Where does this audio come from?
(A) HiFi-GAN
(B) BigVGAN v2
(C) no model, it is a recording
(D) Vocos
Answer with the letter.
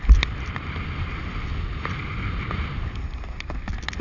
C